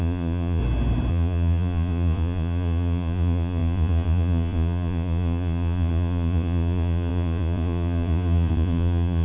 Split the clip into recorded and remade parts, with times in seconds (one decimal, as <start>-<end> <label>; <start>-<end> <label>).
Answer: 0.0-0.6 remade; 0.6-1.1 recorded; 1.1-9.2 remade